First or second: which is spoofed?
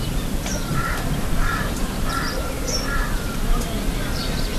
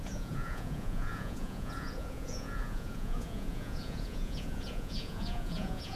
second